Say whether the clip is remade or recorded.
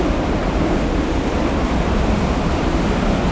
remade